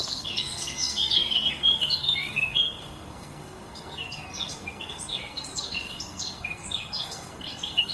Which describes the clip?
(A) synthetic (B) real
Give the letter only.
A